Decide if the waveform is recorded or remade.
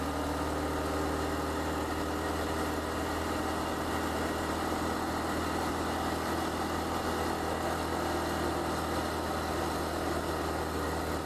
recorded